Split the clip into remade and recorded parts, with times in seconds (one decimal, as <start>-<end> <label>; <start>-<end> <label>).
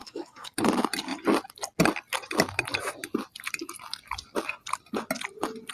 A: 0.0-0.6 remade; 0.6-5.7 recorded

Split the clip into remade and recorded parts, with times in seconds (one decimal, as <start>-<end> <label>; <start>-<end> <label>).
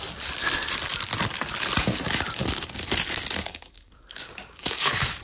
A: 0.0-3.4 recorded; 3.4-5.2 remade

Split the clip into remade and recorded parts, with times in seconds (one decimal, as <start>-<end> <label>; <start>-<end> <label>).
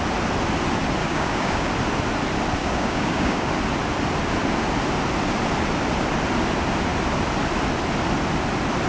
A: 0.0-1.0 recorded; 1.0-1.7 remade; 1.7-2.6 recorded; 2.6-3.5 remade; 3.5-8.9 recorded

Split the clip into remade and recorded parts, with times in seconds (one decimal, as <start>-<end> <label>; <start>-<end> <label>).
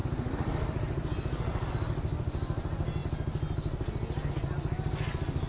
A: 0.0-5.5 recorded